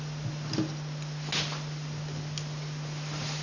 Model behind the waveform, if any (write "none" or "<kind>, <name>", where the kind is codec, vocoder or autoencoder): none